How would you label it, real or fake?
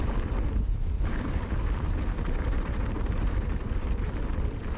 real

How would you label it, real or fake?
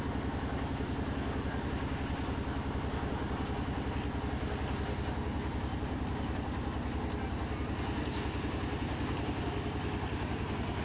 real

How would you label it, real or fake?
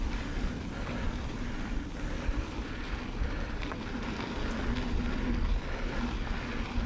real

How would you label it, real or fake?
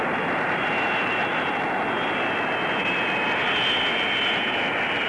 real